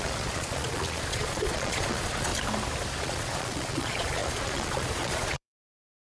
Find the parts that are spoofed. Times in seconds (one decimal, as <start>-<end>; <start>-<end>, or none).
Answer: 0.0-2.3; 3.0-6.1